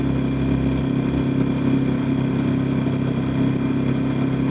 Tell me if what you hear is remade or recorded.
recorded